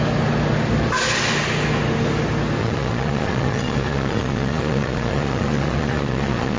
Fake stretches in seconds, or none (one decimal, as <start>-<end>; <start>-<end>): 2.6-6.6